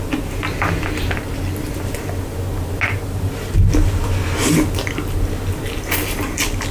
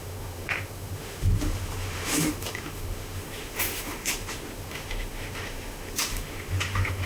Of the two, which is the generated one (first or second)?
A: second